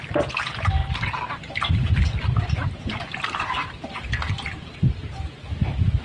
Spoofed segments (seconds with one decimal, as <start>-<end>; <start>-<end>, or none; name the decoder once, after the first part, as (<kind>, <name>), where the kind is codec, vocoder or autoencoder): 2.0-5.6 (vocoder, BigVGAN v2)